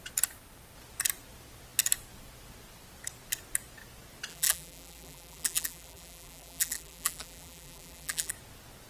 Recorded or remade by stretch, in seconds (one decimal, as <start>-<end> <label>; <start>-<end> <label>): 0.0-4.3 recorded; 4.3-8.3 remade; 8.3-8.9 recorded